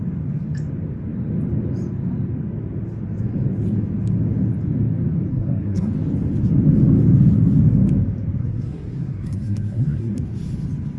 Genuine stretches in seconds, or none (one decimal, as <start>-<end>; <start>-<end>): 0.0-5.3; 5.9-8.4; 10.2-11.0